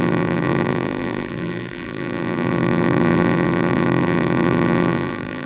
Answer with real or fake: fake